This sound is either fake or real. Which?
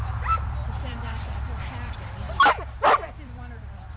fake